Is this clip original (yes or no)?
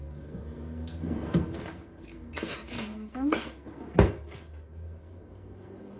no